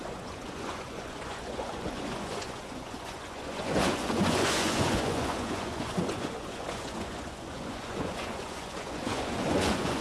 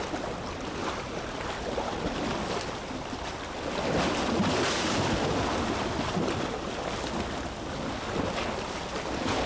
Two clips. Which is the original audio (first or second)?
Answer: second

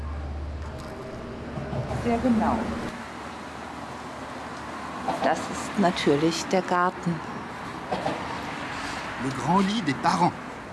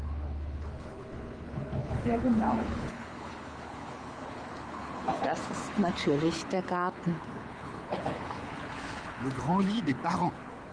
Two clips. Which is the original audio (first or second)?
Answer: first